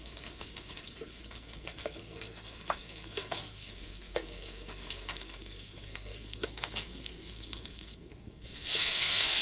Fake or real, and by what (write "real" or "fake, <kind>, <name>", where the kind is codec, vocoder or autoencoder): fake, codec, SNAC